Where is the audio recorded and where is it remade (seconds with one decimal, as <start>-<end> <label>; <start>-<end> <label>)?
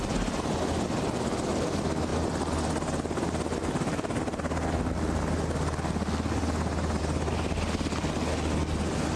0.0-9.2 recorded